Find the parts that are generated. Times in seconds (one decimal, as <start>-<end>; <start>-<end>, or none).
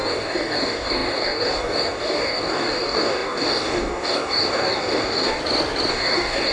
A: 0.0-5.4; 5.9-6.5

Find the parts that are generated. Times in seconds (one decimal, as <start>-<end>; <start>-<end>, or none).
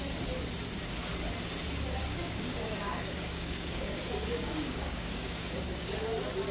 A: 2.0-5.9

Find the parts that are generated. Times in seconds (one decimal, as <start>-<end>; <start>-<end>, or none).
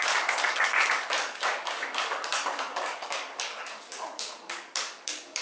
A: 0.0-5.4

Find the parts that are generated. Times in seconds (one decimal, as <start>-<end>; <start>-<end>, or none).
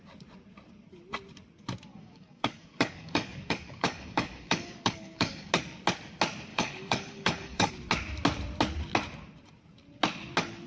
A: 1.9-5.5; 6.5-7.7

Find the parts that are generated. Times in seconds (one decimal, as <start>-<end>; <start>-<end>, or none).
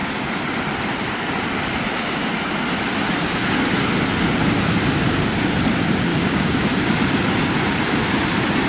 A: 6.1-6.6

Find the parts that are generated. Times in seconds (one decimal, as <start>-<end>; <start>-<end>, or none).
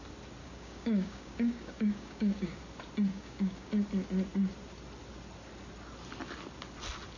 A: 0.4-2.6; 3.1-3.7